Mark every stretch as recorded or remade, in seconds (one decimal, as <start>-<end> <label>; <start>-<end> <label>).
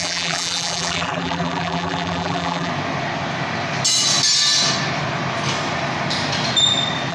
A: 0.0-2.7 remade; 2.7-7.1 recorded